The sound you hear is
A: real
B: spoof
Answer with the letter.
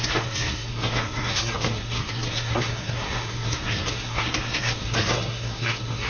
B